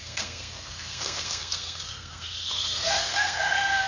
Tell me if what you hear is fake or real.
fake